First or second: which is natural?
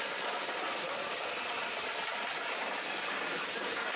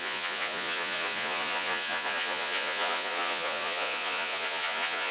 first